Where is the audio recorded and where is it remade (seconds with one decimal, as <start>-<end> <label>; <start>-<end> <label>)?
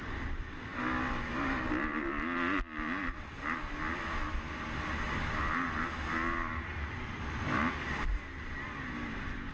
0.0-9.5 recorded